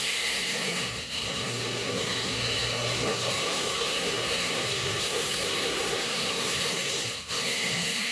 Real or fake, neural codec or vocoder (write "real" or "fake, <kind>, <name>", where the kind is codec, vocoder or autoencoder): fake, codec, SNAC